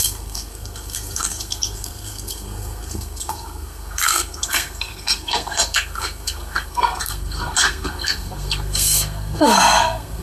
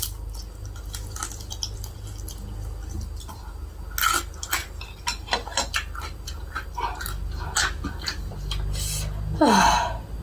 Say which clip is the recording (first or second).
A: second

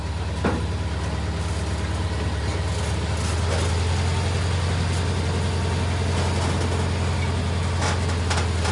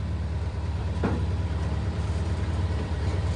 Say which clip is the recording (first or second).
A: first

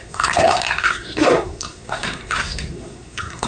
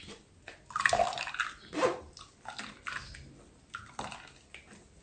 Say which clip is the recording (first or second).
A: second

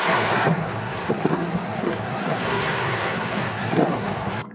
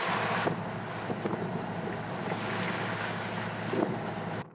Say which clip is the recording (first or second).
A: second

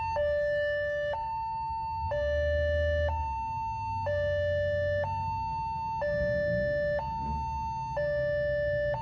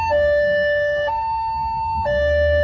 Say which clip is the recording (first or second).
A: first